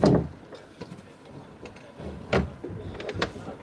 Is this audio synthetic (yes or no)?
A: no